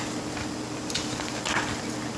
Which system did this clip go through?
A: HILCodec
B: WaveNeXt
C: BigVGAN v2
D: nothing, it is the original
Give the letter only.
D